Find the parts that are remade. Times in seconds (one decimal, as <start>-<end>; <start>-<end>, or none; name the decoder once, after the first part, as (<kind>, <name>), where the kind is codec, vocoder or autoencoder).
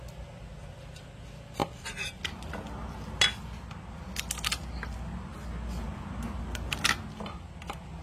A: none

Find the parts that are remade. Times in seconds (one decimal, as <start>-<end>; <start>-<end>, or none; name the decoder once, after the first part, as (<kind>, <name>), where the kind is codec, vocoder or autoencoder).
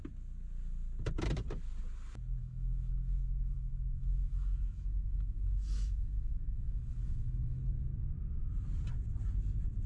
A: 2.4-7.6 (autoencoder, DAC-VAE)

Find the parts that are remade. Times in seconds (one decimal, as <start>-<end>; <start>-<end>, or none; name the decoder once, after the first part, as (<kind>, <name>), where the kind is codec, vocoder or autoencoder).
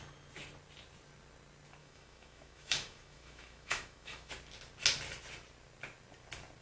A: 1.8-4.3 (autoencoder, DAC-VAE)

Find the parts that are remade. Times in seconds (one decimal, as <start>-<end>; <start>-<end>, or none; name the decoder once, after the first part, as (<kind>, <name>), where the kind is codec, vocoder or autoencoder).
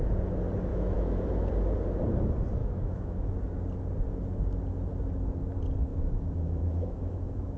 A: 0.7-1.5 (autoencoder, DAC-VAE); 2.6-3.3; 5.9-7.6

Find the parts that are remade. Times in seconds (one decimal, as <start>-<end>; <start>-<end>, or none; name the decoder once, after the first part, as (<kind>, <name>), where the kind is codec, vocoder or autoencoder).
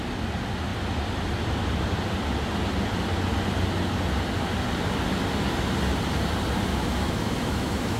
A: 6.7-8.0 (autoencoder, DAC-VAE)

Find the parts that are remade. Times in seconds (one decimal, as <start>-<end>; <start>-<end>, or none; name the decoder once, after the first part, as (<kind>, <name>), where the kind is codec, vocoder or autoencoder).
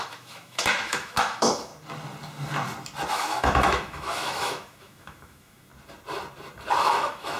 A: 0.0-1.7 (autoencoder, DAC-VAE); 3.1-5.7; 6.8-7.4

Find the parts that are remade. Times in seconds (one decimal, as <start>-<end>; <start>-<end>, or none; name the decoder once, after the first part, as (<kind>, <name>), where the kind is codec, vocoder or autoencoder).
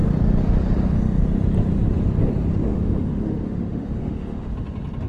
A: 2.7-4.5 (autoencoder, DAC-VAE)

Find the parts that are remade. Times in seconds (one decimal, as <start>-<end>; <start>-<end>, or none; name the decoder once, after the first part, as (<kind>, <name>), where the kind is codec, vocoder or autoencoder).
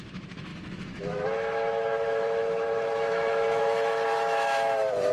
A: 0.0-5.1 (autoencoder, DAC-VAE)